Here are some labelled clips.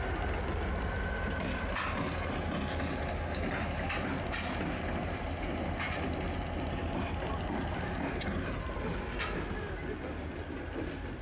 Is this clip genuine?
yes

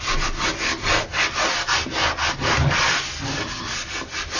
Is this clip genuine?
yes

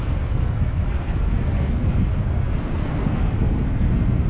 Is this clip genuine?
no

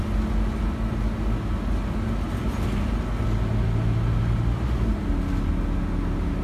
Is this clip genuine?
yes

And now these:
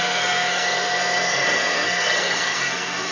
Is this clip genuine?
no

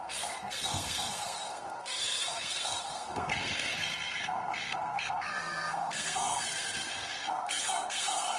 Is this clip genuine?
no